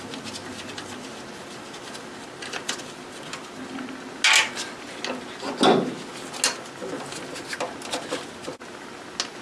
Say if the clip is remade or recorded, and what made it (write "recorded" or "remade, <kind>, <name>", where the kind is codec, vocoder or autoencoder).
recorded